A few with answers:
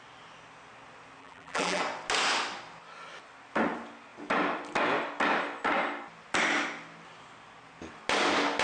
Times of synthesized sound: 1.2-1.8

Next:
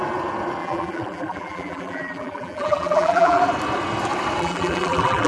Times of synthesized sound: 0.6-3.4; 4.4-5.3

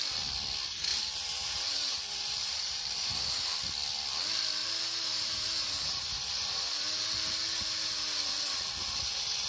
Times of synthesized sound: 0.9-3.5; 4.6-6.8

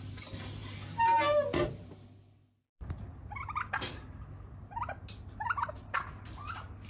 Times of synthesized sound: none

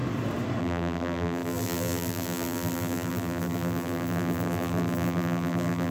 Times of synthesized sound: 0.6-5.9

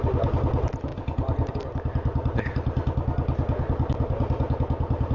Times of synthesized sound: 0.9-1.5

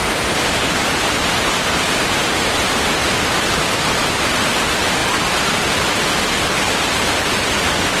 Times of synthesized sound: 0.0-2.6; 4.0-4.6